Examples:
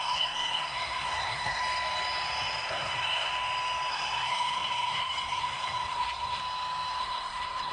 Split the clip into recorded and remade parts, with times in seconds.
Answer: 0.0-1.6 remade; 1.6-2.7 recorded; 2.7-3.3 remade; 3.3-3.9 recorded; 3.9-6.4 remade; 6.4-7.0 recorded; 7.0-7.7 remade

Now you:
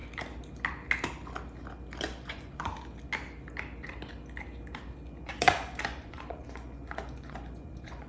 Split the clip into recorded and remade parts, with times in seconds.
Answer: 0.0-2.0 recorded; 2.0-2.7 remade; 2.7-5.3 recorded; 5.3-8.1 remade

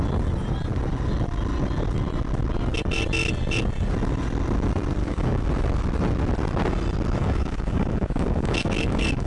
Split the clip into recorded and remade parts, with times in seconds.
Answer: 0.0-5.0 recorded; 5.0-5.5 remade; 5.5-7.2 recorded; 7.2-9.3 remade

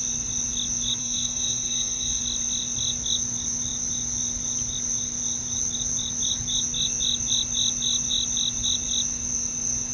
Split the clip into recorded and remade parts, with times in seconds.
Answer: 0.0-1.0 recorded; 1.0-2.2 remade; 2.2-9.9 recorded

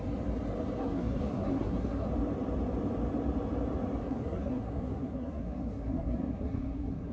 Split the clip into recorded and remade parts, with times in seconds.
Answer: 0.0-0.8 recorded; 0.8-2.1 remade; 2.1-4.0 recorded; 4.0-7.1 remade

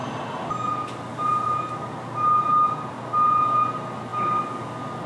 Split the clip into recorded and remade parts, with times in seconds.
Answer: 0.0-5.1 recorded

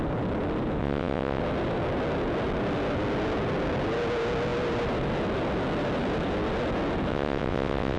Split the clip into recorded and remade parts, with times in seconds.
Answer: 0.0-0.8 recorded; 0.8-1.4 remade; 1.4-7.1 recorded; 7.1-8.0 remade